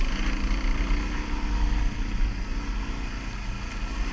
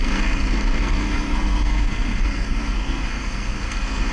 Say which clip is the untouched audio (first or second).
first